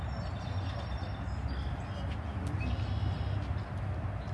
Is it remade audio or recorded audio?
recorded